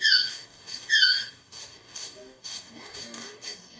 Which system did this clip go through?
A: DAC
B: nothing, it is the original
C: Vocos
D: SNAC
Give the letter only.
A